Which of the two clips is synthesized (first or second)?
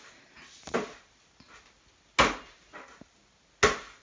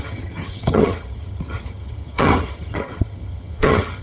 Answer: second